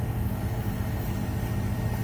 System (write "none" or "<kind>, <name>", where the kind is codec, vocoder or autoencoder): none